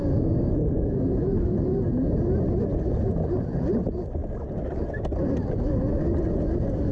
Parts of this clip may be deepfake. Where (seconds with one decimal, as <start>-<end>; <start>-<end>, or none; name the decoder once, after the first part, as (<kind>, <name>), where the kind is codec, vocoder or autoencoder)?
none